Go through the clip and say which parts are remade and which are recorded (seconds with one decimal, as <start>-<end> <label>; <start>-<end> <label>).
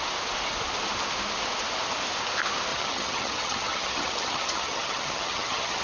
0.0-2.7 recorded; 2.7-5.8 remade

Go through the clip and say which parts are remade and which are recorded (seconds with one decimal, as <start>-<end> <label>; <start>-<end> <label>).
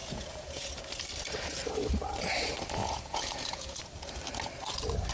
0.0-0.7 remade; 0.7-2.8 recorded; 2.8-3.8 remade; 3.8-5.1 recorded